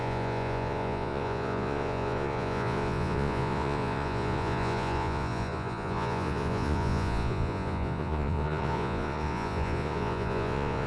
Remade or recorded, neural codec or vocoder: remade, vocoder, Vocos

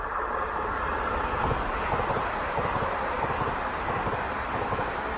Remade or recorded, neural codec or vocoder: recorded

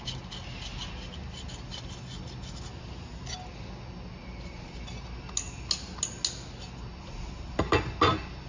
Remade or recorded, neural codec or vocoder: recorded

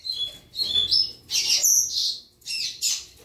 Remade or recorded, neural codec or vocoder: recorded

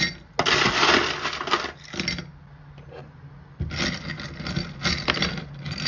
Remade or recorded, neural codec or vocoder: recorded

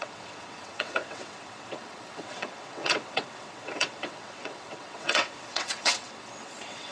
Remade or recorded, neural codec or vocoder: remade, vocoder, WaveNeXt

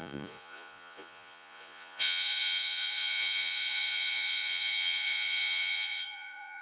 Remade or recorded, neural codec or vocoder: remade, vocoder, Vocos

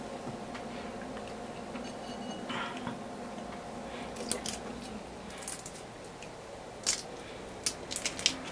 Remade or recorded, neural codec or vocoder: recorded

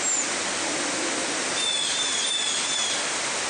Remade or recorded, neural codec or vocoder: recorded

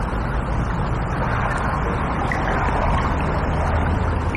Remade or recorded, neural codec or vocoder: recorded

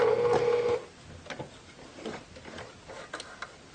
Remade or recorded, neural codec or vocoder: recorded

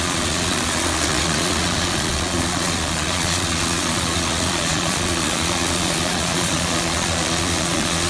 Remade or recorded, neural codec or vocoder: remade, vocoder, Vocos